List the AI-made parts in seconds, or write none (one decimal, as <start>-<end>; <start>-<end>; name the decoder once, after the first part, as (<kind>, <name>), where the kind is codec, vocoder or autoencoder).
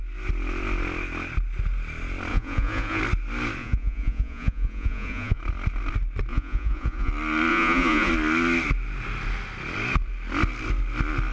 2.3-3.0 (vocoder, Vocos); 3.6-5.4; 6.3-7.1; 7.5-8.1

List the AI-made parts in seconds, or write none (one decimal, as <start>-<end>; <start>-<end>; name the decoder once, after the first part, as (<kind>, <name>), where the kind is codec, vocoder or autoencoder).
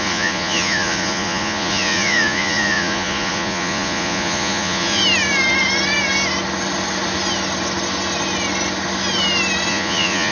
0.0-5.0 (vocoder, Vocos); 9.7-10.3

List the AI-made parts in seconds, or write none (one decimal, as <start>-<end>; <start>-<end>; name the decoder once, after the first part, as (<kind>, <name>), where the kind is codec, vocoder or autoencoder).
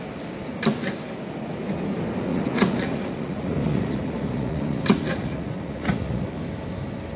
2.3-6.4 (vocoder, Vocos)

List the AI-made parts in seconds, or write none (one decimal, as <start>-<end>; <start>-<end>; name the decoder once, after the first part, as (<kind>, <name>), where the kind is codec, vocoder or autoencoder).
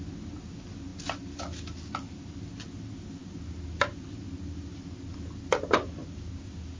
none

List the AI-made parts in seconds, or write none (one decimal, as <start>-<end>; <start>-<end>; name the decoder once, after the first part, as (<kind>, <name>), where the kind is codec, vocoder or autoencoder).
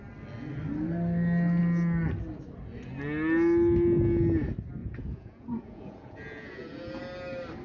4.8-7.0 (vocoder, Vocos)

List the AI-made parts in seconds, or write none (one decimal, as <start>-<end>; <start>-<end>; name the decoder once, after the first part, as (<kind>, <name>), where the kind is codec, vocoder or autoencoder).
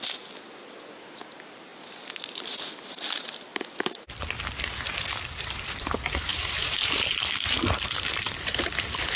none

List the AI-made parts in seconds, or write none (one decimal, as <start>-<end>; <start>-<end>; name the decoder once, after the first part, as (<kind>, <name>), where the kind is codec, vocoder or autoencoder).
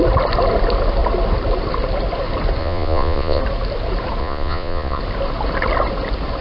2.6-3.4 (vocoder, Vocos); 4.2-5.0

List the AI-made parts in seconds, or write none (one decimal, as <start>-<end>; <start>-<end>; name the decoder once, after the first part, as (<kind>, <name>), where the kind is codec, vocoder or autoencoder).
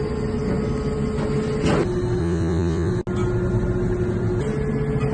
2.2-2.9 (vocoder, Vocos)